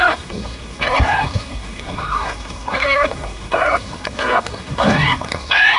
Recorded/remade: remade